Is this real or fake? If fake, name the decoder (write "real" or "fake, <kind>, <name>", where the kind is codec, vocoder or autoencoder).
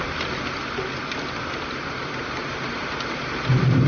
real